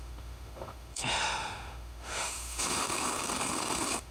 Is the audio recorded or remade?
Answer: remade